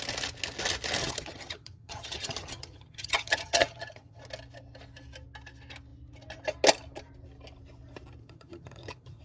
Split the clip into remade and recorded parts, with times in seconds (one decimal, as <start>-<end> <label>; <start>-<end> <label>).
0.0-1.0 recorded; 1.0-4.2 remade; 4.2-8.2 recorded; 8.2-9.2 remade